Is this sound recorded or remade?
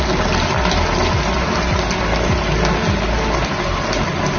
recorded